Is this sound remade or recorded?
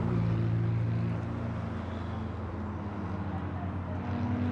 recorded